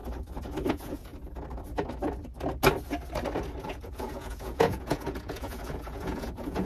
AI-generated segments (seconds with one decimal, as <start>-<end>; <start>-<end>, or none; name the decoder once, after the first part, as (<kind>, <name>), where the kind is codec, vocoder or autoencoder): 0.7-1.1 (vocoder, Vocos); 3.6-6.7

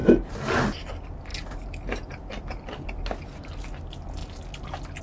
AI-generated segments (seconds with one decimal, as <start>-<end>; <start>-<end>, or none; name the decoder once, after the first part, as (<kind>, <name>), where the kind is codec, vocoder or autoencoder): none

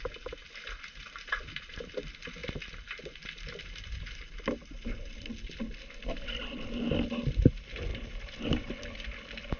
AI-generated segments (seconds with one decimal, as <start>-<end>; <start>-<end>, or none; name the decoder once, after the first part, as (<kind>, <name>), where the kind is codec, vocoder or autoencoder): 0.4-1.9 (vocoder, BigVGAN v2); 7.9-8.7

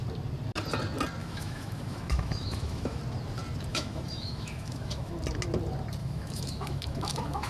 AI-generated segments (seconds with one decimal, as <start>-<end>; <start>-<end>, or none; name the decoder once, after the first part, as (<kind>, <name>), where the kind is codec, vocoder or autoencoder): 1.2-3.0 (autoencoder, DAC-VAE); 3.7-5.1; 6.0-7.5

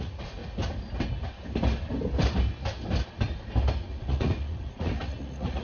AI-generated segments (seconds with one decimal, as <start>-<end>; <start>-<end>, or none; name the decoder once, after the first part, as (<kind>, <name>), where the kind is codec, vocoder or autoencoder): 0.0-0.4 (vocoder, Vocos); 3.8-5.6